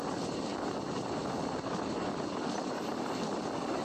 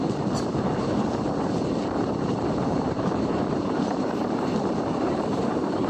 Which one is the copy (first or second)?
second